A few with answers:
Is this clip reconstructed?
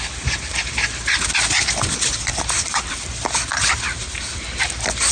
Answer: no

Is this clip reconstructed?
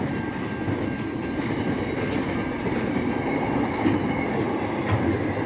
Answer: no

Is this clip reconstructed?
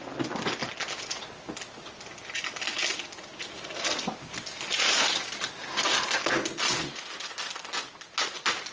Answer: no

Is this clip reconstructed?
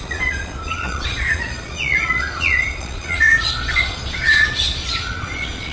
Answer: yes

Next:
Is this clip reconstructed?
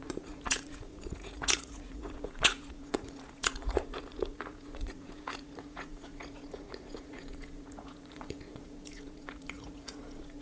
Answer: yes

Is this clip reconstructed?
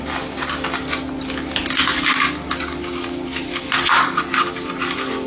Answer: no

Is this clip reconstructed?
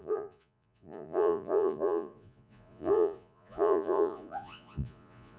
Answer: yes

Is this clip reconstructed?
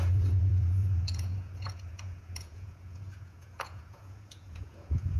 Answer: yes